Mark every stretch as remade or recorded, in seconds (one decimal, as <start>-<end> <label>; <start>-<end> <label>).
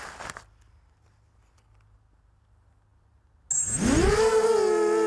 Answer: 0.0-5.1 recorded